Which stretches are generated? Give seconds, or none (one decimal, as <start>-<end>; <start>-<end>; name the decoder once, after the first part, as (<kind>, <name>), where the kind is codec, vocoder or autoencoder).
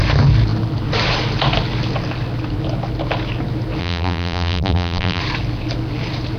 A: 3.8-5.2 (vocoder, BigVGAN v2)